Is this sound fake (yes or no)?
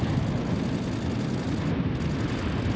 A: no